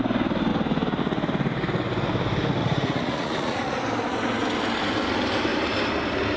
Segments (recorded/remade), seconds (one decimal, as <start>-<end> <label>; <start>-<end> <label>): 0.0-2.6 recorded; 2.6-3.8 remade; 3.8-6.4 recorded